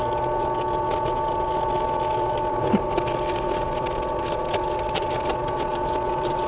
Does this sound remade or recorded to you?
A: recorded